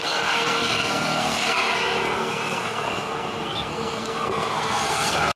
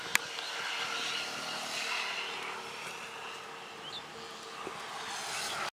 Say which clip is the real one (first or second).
second